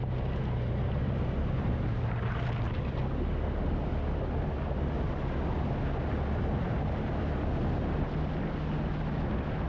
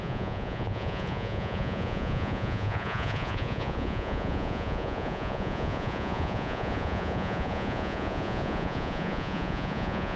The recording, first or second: first